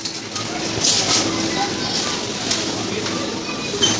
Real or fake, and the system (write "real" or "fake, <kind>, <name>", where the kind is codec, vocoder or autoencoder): real